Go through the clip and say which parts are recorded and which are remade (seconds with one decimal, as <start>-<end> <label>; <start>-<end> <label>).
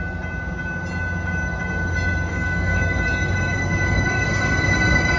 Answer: 0.0-2.3 recorded; 2.3-2.8 remade; 2.8-3.6 recorded; 3.6-4.5 remade; 4.5-5.2 recorded